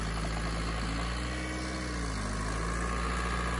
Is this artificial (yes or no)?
no